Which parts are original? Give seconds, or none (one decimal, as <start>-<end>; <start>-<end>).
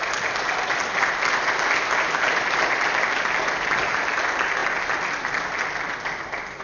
0.0-6.6